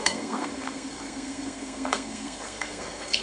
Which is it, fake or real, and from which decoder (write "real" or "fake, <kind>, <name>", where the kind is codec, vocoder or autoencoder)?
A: fake, codec, SNAC